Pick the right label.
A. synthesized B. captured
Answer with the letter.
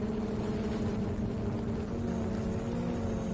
B